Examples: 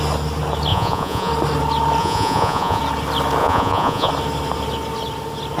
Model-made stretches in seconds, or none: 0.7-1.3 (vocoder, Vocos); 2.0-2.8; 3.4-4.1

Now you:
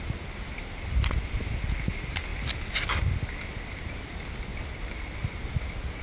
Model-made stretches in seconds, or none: none

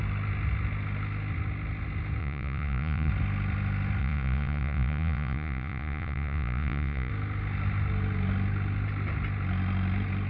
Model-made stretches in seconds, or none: 2.2-3.1 (vocoder, Vocos); 4.0-7.1

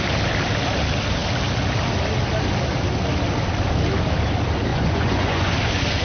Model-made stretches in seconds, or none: 4.7-5.5 (vocoder, Vocos)

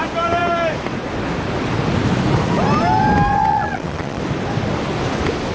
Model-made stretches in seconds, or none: 3.5-4.2 (vocoder, Vocos)

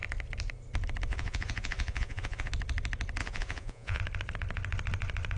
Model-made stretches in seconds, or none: 1.1-2.5 (vocoder, Vocos); 3.2-4.0

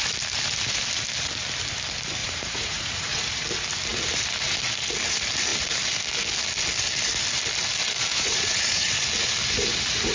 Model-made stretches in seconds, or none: 2.2-3.2 (vocoder, Vocos); 8.1-8.9